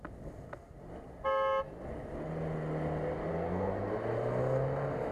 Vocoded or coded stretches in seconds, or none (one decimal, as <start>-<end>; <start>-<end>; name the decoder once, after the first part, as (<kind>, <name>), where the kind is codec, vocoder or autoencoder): 3.3-3.9 (codec, SNAC)